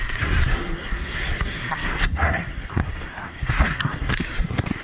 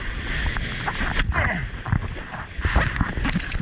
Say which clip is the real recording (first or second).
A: second